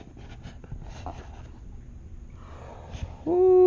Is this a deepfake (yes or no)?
no